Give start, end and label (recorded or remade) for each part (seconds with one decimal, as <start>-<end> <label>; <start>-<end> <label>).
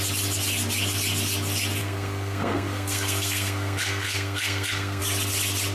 0.0-1.8 recorded; 1.8-5.0 remade; 5.0-5.7 recorded